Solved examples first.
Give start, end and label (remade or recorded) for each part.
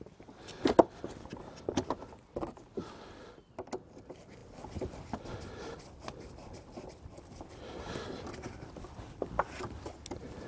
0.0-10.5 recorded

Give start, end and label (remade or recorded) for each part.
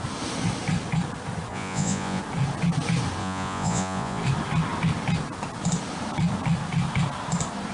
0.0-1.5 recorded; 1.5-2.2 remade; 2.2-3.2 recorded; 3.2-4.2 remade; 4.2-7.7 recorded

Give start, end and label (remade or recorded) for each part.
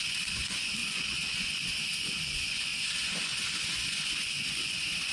0.0-5.1 remade